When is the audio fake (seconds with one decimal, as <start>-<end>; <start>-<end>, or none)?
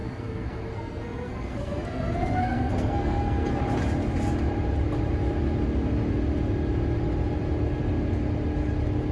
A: 0.0-3.6